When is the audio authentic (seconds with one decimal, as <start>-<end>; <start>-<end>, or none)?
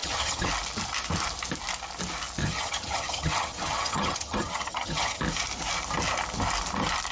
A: 0.5-2.4; 5.2-7.1